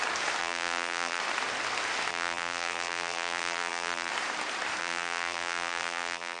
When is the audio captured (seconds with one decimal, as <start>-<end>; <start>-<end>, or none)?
0.0-0.4; 1.2-2.1; 4.1-4.8